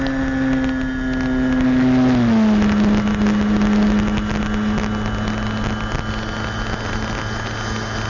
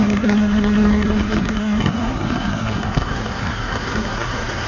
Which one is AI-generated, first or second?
second